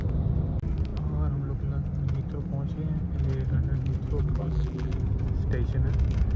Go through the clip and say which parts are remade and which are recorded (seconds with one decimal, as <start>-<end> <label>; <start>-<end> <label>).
0.0-4.2 recorded; 4.2-4.9 remade; 4.9-6.4 recorded